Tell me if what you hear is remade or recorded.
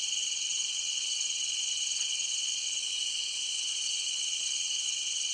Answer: remade